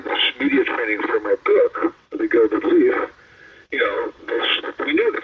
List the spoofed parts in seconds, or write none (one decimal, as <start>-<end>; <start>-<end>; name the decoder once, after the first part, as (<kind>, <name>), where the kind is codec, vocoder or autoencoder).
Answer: 1.5-2.2 (vocoder, WaveNeXt); 3.5-4.6